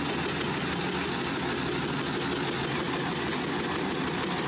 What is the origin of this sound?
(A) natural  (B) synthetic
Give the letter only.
A